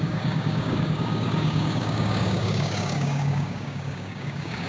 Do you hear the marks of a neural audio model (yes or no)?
yes